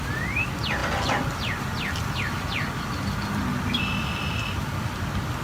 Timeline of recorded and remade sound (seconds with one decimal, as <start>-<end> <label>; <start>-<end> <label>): 0.0-5.4 recorded